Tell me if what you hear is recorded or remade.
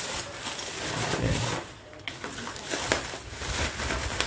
recorded